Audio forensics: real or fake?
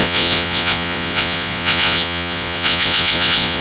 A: fake